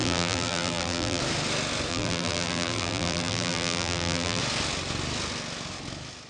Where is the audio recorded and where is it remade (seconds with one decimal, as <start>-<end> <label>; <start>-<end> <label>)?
0.0-1.2 remade; 1.2-1.9 recorded; 1.9-4.4 remade; 4.4-6.3 recorded